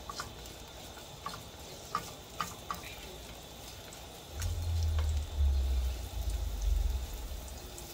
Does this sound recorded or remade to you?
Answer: recorded